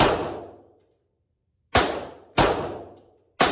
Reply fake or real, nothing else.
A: real